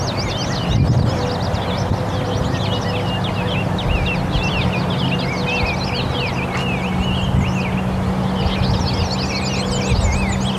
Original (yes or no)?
yes